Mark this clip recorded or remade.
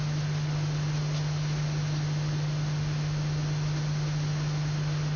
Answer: recorded